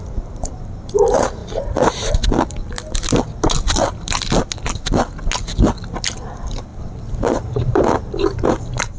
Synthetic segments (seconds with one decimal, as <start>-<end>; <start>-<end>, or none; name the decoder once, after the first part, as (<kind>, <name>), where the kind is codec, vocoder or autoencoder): 0.0-1.4 (vocoder, BigVGAN v2); 6.3-9.0